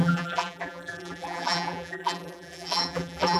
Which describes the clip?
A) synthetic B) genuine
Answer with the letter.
A